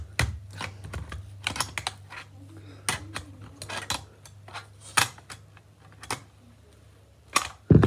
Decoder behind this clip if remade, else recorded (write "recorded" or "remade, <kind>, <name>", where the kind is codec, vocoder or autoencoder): recorded